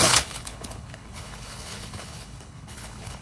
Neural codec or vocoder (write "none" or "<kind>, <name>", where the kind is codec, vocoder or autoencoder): codec, HILCodec